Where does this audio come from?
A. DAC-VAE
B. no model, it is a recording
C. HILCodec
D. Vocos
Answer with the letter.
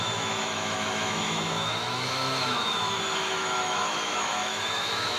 A